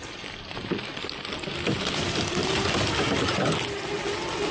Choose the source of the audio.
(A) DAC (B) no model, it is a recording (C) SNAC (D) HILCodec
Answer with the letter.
B